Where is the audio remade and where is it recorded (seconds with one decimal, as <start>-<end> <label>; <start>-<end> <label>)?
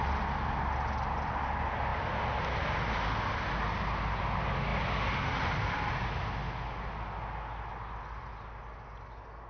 0.0-9.5 recorded